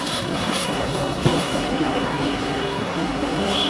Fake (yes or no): yes